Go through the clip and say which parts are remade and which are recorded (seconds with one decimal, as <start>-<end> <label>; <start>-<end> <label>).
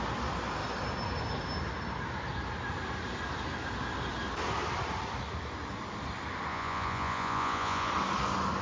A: 0.0-6.5 recorded; 6.5-7.9 remade; 7.9-8.6 recorded